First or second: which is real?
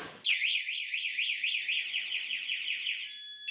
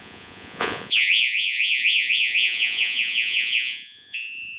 first